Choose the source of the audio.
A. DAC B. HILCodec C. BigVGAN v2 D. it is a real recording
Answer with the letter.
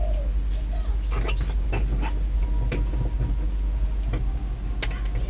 D